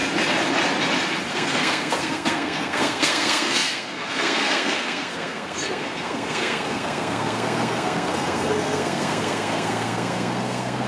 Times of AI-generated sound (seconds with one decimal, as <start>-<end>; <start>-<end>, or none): 1.3-10.9